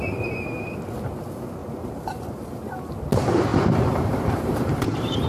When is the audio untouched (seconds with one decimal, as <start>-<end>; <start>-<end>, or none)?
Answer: 0.0-1.6; 2.9-3.5